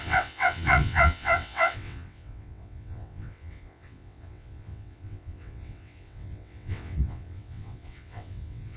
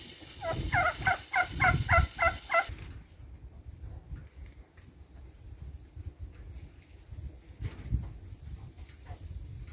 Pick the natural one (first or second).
second